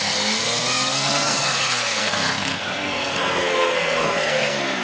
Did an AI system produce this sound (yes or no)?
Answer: yes